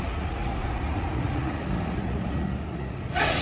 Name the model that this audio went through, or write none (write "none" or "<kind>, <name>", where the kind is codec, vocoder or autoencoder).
vocoder, Vocos